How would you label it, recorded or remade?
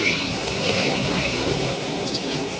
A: remade